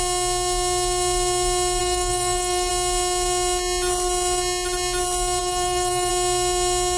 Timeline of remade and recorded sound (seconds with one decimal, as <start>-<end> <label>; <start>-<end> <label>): 0.0-1.8 recorded; 1.8-2.7 remade; 2.7-5.4 recorded; 5.4-6.1 remade; 6.1-7.0 recorded